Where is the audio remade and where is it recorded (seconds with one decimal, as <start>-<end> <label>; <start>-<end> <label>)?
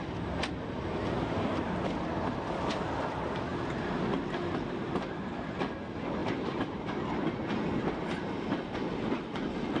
0.0-6.2 recorded; 6.2-6.9 remade; 6.9-9.8 recorded